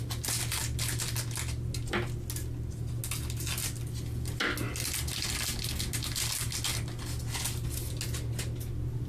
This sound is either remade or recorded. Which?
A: recorded